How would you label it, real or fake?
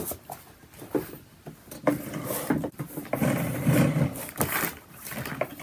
real